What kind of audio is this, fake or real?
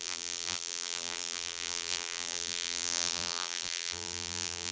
fake